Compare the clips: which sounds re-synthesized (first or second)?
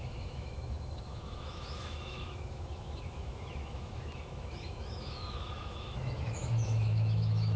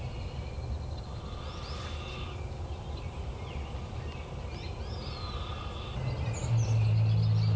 first